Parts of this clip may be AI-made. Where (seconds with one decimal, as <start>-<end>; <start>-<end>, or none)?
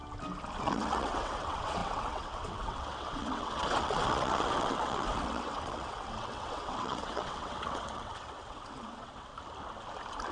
0.6-9.3